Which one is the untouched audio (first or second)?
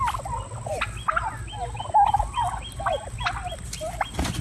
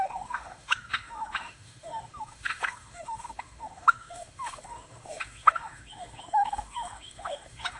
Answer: first